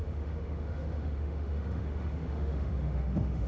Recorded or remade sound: remade